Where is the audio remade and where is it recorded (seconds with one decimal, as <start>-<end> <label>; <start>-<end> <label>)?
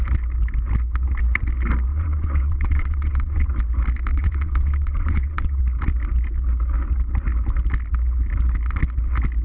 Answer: 0.0-1.9 recorded; 1.9-3.5 remade; 3.5-4.1 recorded; 4.1-5.6 remade; 5.6-9.4 recorded